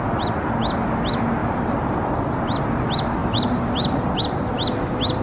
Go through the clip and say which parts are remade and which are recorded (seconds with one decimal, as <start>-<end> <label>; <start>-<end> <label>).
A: 0.0-1.4 recorded; 1.4-2.1 remade; 2.1-3.2 recorded; 3.2-4.2 remade; 4.2-5.2 recorded

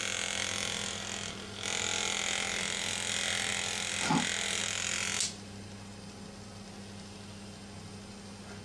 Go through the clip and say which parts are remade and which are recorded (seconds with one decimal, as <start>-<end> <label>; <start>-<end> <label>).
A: 0.0-8.6 recorded

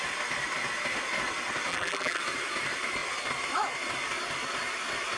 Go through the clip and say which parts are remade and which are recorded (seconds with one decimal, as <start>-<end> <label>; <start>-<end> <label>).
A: 0.0-1.7 recorded; 1.7-2.2 remade; 2.2-5.2 recorded